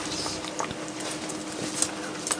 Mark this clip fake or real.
real